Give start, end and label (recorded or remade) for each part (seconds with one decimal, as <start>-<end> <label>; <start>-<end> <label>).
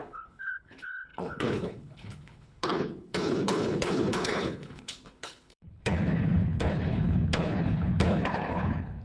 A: 0.0-9.0 remade